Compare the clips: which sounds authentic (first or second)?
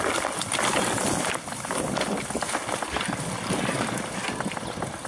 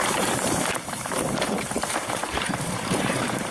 first